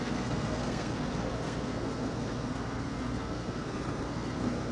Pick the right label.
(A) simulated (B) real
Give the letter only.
A